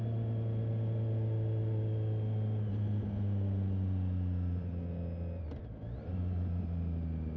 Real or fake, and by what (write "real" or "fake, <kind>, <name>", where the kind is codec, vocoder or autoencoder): real